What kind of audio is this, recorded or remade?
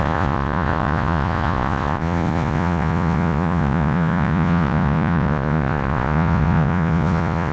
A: remade